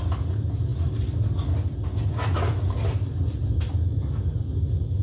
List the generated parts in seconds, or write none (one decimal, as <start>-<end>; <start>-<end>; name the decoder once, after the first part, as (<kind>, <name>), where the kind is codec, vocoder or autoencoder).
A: none